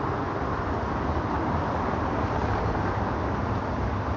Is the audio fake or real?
real